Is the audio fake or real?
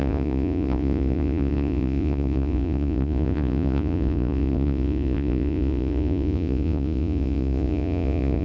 fake